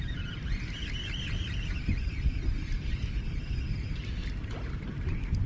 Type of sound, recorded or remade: recorded